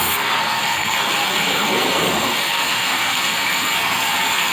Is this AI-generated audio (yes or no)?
yes